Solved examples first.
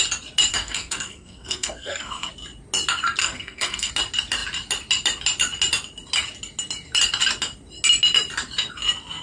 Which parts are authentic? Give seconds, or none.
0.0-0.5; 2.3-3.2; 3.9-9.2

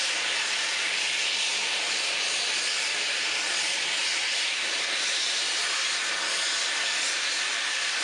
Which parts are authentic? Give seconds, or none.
0.0-8.0

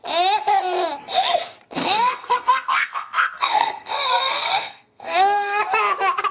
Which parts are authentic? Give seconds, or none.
0.0-1.8; 5.6-6.3

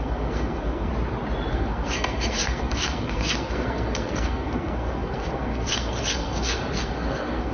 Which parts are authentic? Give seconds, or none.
0.9-1.5

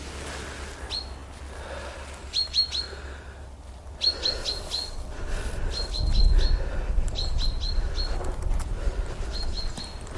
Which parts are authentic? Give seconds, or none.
0.0-10.2

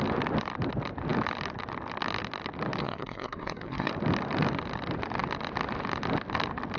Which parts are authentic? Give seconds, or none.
0.0-2.8; 3.9-6.8